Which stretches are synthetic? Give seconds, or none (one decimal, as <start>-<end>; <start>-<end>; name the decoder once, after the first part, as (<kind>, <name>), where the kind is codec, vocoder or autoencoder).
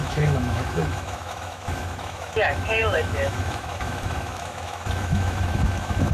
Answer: 0.0-6.1 (autoencoder, DAC-VAE)